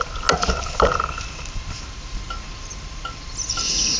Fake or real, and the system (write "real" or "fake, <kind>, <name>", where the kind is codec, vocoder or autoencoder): real